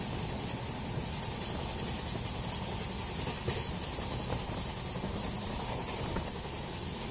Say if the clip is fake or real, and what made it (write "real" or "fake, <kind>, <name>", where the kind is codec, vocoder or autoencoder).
real